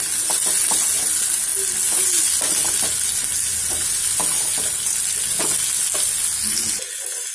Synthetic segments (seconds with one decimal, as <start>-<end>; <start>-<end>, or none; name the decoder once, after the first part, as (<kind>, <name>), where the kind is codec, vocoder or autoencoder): none